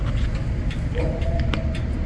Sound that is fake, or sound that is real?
real